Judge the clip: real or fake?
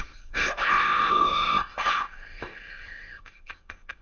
fake